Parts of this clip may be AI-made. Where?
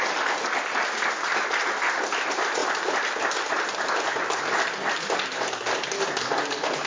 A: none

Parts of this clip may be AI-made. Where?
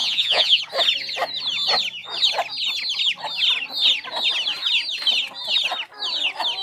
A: 0.0-0.6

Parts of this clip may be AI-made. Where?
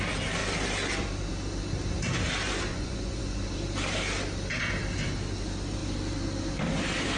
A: 2.7-3.4